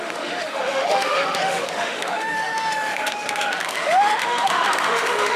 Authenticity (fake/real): fake